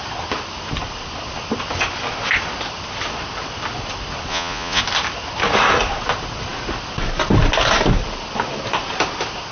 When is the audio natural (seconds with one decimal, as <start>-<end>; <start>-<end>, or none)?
0.0-4.3; 4.8-9.5